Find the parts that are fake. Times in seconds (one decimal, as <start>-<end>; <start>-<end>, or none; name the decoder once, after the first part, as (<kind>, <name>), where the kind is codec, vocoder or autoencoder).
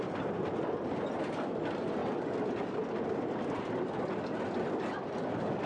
none